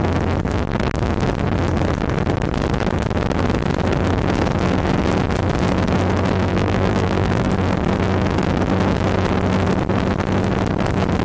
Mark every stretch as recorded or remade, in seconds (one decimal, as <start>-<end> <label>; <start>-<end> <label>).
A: 0.0-6.5 recorded; 6.5-7.5 remade; 7.5-11.2 recorded